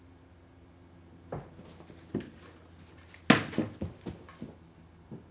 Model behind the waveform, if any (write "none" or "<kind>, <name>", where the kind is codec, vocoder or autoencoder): none